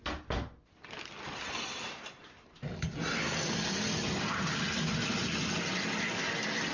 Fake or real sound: real